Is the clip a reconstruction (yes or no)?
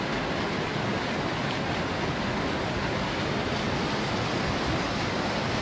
no